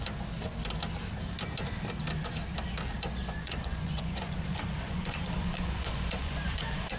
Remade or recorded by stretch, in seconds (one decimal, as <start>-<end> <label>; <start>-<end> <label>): 0.0-3.2 recorded; 3.2-7.0 remade